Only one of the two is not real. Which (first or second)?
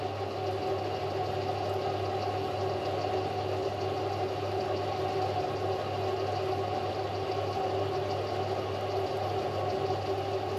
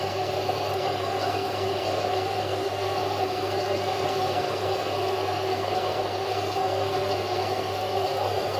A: second